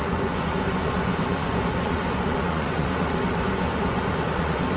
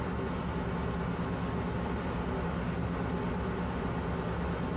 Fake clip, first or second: first